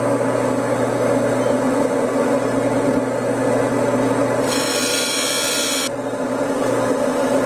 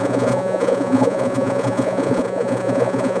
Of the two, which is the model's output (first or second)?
second